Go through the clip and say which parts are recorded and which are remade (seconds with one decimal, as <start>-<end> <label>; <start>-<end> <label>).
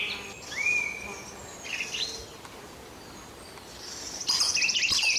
0.0-5.2 recorded